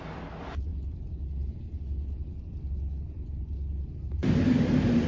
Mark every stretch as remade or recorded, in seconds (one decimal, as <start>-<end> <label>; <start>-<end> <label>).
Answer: 0.0-5.1 recorded